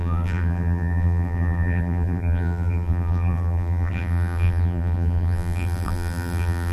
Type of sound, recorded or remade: remade